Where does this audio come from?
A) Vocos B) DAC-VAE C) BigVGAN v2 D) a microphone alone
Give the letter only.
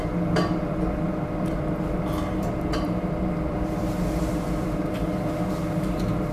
C